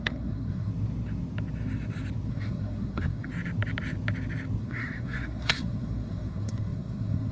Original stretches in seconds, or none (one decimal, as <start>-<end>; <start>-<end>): 0.7-2.3; 3.3-4.6